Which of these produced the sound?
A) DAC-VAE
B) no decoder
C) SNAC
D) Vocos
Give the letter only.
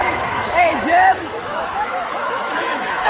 A